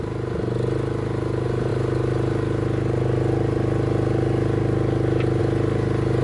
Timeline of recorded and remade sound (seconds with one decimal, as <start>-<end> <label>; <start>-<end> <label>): 0.0-6.2 recorded

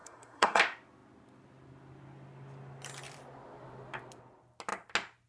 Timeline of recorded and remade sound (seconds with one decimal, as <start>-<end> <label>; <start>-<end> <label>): 0.0-0.6 remade; 0.6-5.3 recorded

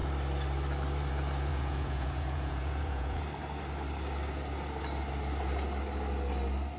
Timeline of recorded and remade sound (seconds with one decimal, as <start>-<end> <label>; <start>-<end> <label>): 0.0-1.5 recorded; 1.5-3.2 remade; 3.2-6.8 recorded

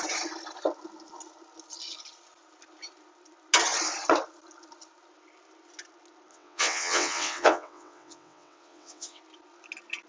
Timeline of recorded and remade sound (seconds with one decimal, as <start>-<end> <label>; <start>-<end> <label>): 0.0-6.3 recorded; 6.3-9.2 remade; 9.2-10.1 recorded